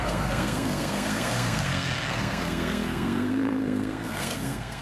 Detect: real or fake fake